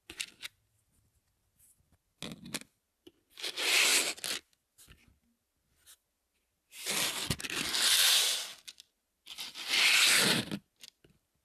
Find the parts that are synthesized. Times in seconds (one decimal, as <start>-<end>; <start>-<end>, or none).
none